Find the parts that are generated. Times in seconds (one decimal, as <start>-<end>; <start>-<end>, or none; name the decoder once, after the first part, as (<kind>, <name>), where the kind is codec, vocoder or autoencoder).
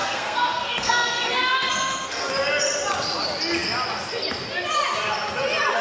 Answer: 0.0-2.3 (codec, SNAC)